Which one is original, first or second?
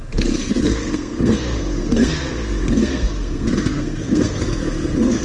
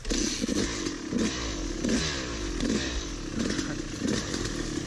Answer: second